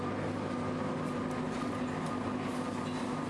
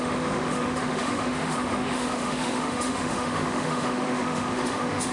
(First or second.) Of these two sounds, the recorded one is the first